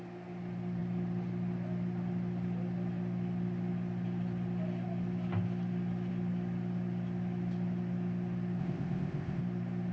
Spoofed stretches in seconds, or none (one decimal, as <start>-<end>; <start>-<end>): 8.6-9.4